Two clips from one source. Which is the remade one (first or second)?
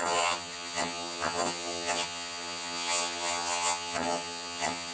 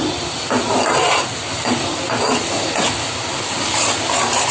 first